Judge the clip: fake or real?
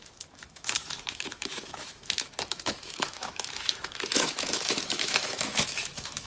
fake